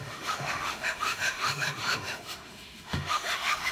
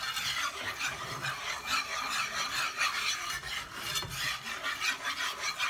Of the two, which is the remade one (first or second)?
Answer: first